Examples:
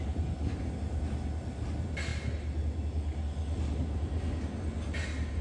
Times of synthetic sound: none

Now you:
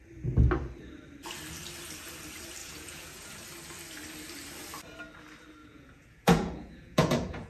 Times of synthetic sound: 2.6-3.3 (vocoder, Vocos); 5.6-7.5

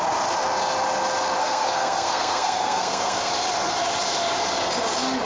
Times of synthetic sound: 1.4-3.3 (codec, SNAC)

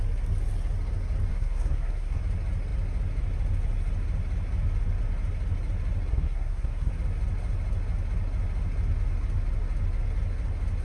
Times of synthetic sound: 1.3-2.2 (codec, SNAC); 6.1-6.9